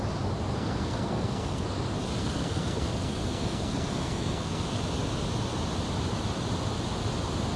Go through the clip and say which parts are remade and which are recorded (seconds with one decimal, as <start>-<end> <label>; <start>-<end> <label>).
0.0-0.5 recorded; 0.5-1.7 remade; 1.7-2.2 recorded; 2.2-4.8 remade; 4.8-7.6 recorded